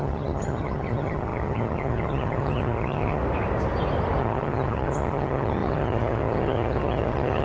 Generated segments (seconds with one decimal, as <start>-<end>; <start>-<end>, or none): 0.0-3.2; 4.2-7.4